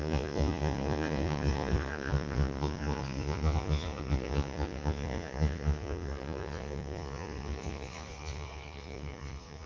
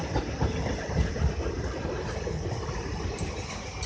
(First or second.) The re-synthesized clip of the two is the first